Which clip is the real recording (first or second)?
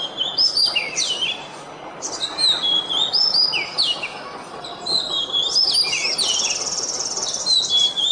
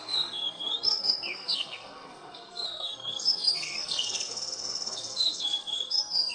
first